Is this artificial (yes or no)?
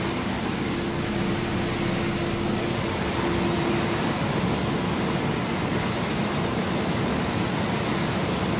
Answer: no